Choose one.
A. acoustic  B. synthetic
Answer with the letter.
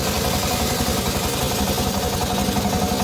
A